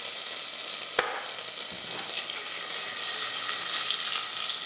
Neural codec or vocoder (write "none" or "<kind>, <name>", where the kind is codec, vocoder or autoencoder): none